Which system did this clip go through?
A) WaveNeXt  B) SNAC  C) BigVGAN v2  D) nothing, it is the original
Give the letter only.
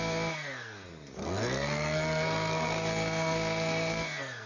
B